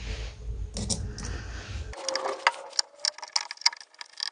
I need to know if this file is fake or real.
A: real